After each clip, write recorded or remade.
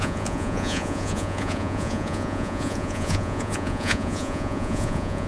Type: remade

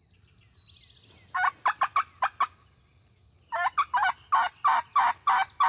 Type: recorded